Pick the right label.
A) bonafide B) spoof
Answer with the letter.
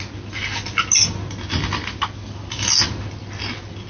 A